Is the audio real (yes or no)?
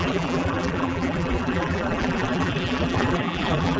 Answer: no